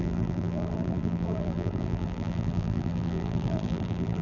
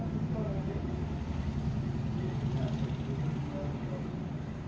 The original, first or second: second